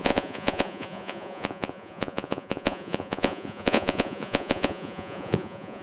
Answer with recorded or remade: remade